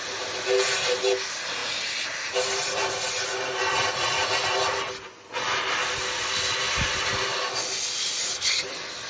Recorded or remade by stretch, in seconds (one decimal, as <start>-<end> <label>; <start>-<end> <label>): 0.0-9.1 recorded